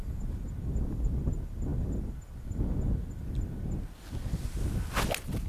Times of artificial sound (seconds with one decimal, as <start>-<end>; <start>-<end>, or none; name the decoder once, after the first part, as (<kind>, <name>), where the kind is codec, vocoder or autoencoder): none